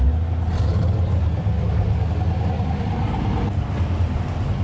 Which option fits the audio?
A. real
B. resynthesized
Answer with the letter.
A